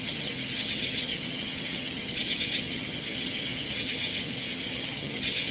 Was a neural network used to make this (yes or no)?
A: yes